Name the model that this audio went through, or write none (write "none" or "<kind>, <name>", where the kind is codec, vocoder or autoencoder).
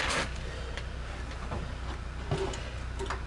none